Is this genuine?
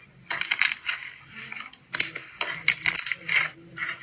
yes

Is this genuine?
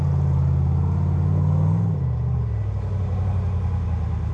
yes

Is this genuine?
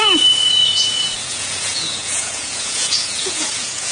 no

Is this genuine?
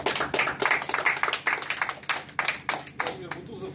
yes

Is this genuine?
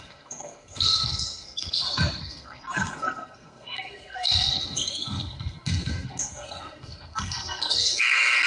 no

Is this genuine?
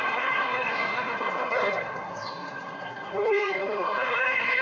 no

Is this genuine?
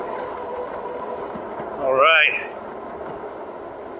yes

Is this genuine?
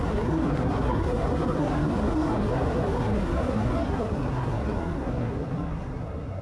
no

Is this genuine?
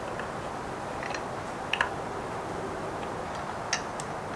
yes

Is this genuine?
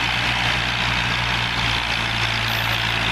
yes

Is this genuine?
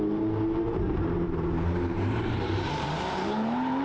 no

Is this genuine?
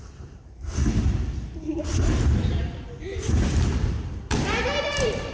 no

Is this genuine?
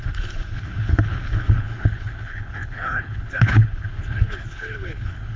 no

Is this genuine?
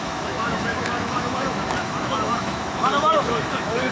no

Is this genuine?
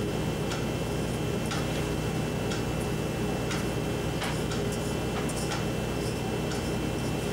yes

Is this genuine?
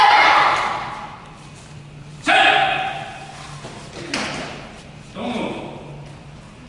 yes